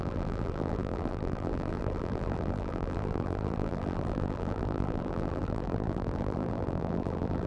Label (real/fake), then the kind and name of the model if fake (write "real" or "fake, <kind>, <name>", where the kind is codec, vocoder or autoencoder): fake, vocoder, BigVGAN v2